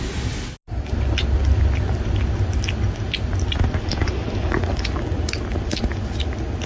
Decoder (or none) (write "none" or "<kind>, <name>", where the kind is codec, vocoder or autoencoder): none